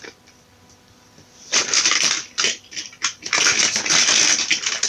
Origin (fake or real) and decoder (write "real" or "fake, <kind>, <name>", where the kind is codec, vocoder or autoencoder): real